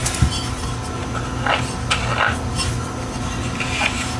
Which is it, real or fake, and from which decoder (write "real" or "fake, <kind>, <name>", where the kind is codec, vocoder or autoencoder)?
real